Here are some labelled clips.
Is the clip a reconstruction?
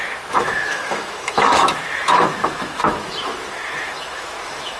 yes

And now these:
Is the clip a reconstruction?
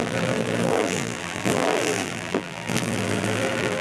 yes